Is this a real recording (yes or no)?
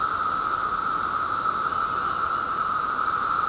yes